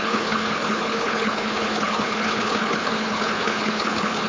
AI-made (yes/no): yes